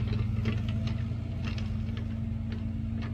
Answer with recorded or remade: recorded